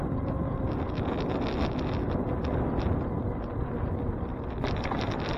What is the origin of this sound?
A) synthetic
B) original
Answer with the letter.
B